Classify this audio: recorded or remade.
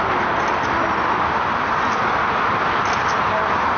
recorded